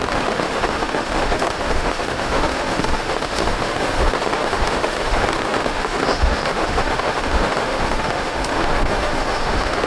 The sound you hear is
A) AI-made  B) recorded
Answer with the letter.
A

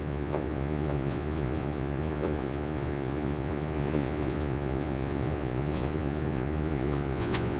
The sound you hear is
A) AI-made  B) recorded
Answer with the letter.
A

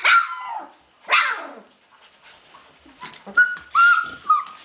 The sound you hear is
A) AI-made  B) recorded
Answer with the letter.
B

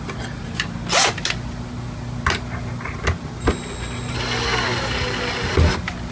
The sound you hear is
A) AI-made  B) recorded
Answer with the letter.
B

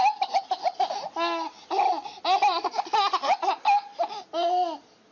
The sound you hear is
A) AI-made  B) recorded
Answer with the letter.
B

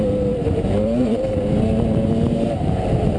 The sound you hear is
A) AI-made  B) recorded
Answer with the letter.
A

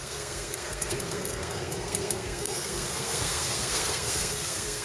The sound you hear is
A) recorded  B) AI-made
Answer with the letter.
B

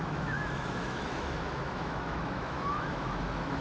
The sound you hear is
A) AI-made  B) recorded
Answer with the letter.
A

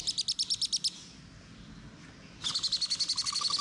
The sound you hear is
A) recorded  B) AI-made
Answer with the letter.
A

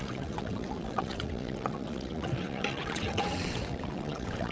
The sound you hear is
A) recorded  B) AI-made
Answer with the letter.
B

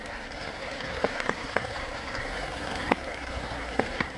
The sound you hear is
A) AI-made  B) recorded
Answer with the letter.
A